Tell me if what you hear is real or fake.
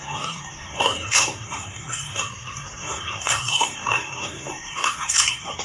fake